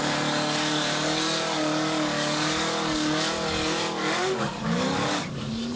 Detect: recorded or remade remade